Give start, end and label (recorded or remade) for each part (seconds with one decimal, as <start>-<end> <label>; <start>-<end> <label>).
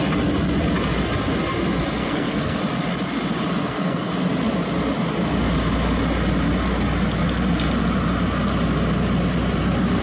0.0-2.0 recorded; 2.0-2.6 remade; 2.6-3.6 recorded; 3.6-4.1 remade; 4.1-10.0 recorded